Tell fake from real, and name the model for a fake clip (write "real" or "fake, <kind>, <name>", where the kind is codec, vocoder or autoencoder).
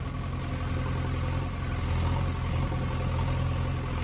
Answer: real